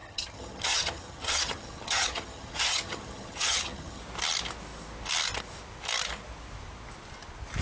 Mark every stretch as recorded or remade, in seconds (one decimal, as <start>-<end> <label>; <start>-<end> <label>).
0.0-4.0 remade; 4.0-7.6 recorded